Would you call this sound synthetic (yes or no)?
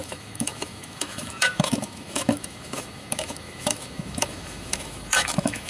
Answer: yes